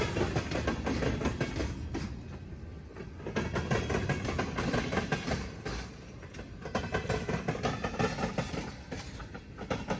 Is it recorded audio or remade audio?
recorded